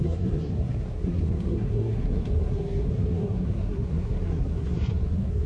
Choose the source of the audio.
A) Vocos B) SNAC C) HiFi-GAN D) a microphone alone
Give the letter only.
B